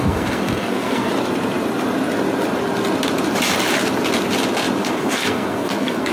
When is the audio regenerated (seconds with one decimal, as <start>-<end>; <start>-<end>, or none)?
0.0-1.1; 4.8-6.1